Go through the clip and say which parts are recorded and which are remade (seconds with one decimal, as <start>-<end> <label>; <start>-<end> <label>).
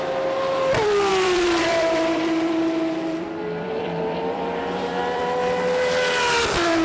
0.0-1.1 recorded; 1.1-5.2 remade; 5.2-6.8 recorded